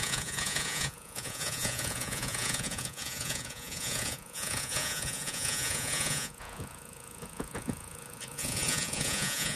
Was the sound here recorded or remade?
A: remade